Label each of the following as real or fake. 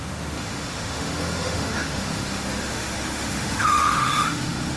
fake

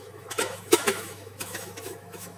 fake